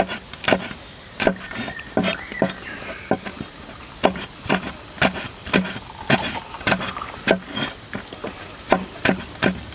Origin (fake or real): real